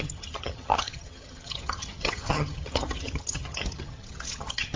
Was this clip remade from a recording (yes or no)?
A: yes